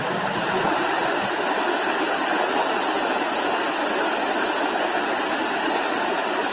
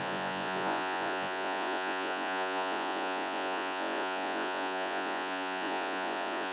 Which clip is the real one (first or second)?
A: first